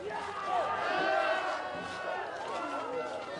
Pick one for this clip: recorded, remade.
recorded